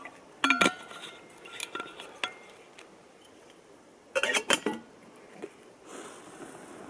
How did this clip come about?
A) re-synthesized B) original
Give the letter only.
B